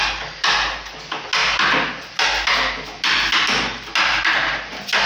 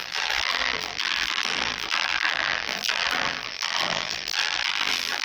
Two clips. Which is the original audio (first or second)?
first